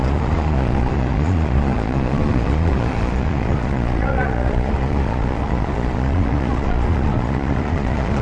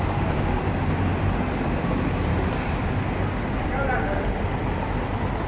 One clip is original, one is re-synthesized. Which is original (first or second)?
second